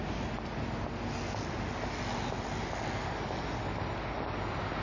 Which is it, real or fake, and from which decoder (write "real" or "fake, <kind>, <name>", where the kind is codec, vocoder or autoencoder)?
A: real